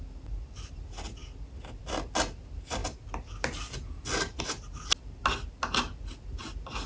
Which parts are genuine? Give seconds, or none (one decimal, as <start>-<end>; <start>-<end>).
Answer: 0.0-6.9